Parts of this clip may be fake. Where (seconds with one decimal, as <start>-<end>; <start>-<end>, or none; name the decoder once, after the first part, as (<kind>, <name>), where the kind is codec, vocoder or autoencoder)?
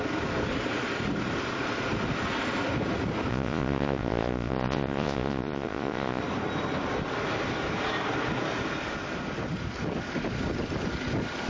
3.3-6.2 (vocoder, Vocos)